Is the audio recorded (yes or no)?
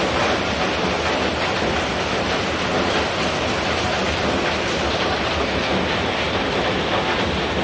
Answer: yes